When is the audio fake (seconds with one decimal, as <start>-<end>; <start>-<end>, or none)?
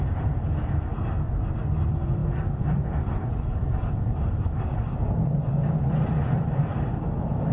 none